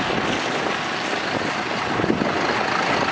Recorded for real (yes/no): yes